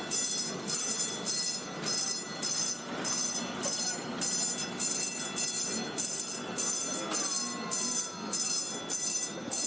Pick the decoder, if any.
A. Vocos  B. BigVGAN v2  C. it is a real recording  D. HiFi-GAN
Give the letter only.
C